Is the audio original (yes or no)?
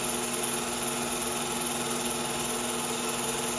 yes